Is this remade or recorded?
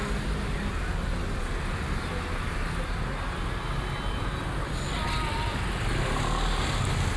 recorded